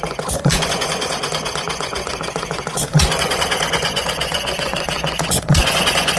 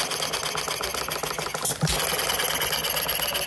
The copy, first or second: first